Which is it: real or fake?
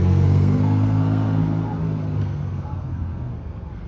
fake